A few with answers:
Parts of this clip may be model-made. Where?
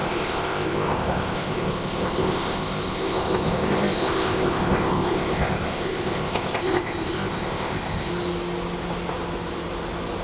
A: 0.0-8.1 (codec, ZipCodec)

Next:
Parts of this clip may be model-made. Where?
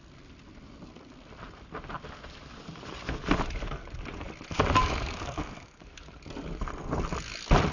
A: 4.8-5.9 (codec, DAC)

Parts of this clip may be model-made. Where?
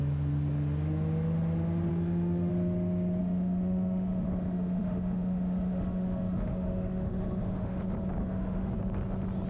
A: 1.9-2.5 (autoencoder, DAC-VAE); 3.2-7.8; 8.2-8.7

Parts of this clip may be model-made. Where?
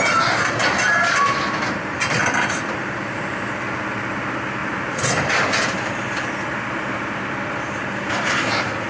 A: 2.2-2.7 (vocoder, BigVGAN v2)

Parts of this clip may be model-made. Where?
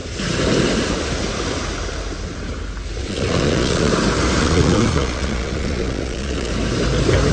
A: 3.0-3.9 (vocoder, Vocos); 4.4-6.5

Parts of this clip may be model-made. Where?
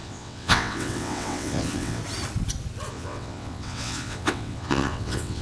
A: 0.0-2.0 (vocoder, WaveNeXt); 2.9-5.4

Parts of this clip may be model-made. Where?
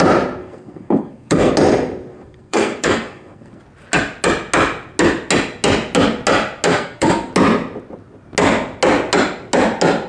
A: 0.4-1.5 (codec, SNAC); 2.1-3.6; 6.7-7.3